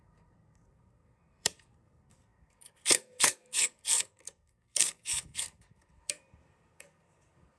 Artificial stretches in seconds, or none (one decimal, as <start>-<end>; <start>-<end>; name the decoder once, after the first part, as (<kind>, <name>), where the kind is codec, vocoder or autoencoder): 0.0-7.6 (codec, SNAC)